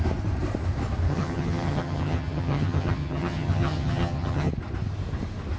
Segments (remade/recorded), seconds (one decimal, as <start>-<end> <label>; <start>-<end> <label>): 0.0-1.1 recorded; 1.1-4.5 remade; 4.5-5.6 recorded